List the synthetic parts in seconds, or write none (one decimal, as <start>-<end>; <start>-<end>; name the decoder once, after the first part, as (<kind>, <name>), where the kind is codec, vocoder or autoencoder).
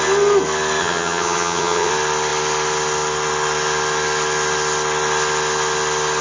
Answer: 0.8-1.9 (vocoder, HiFi-GAN)